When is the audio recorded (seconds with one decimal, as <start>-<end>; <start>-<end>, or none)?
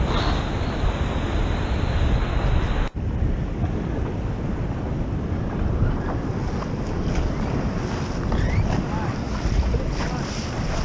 0.0-9.2; 9.8-10.8